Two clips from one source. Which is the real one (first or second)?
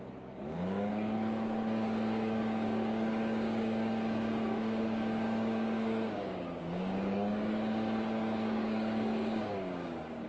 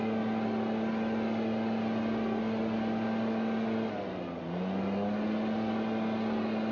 second